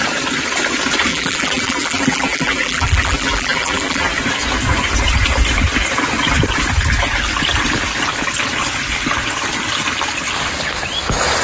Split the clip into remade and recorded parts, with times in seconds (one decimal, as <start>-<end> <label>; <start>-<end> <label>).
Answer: 0.0-1.1 recorded; 1.1-4.0 remade; 4.0-11.4 recorded